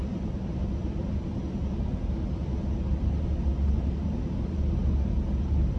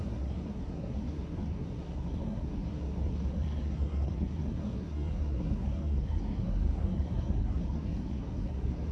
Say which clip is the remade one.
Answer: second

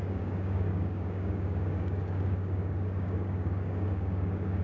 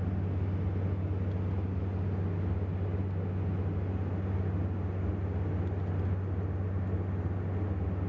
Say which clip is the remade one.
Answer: first